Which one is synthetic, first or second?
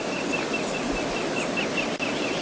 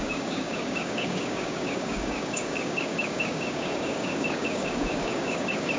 second